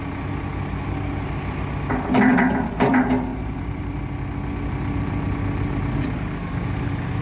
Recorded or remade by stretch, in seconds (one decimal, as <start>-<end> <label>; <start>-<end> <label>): 0.0-2.3 recorded; 2.3-2.9 remade; 2.9-3.3 recorded; 3.3-4.0 remade; 4.0-7.2 recorded